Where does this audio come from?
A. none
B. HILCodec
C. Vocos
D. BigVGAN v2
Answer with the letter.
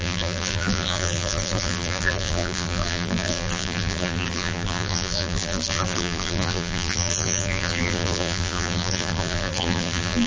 D